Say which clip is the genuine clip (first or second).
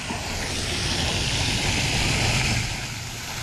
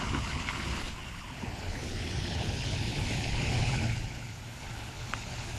first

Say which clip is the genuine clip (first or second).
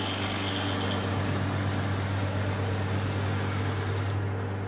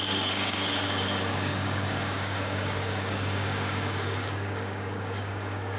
first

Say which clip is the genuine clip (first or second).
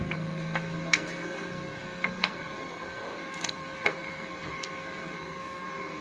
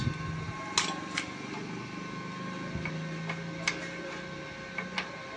second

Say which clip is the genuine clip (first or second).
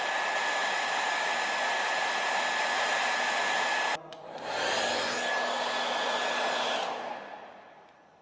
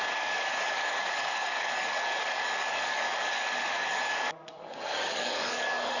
first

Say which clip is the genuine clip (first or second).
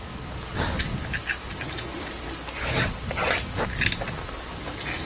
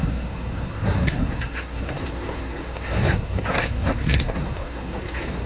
first